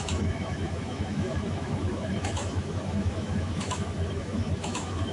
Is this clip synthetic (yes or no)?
yes